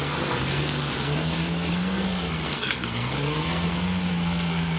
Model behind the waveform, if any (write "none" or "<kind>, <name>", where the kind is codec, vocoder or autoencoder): codec, SNAC